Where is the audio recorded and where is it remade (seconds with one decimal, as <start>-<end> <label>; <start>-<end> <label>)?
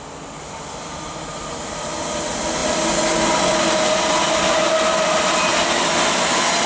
0.0-6.7 recorded